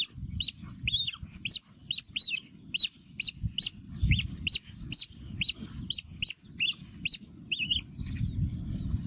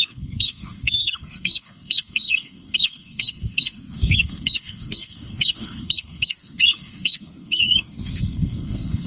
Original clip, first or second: first